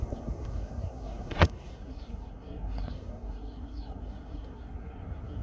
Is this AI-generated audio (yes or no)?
yes